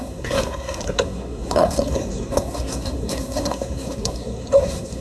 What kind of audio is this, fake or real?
fake